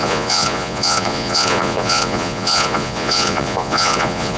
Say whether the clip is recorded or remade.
remade